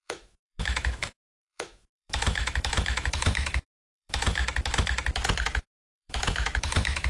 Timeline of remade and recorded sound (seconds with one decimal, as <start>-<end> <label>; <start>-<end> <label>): 0.0-4.4 remade; 4.4-5.4 recorded; 5.4-7.1 remade